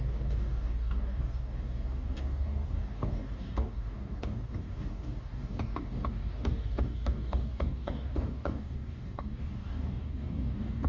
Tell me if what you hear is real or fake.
fake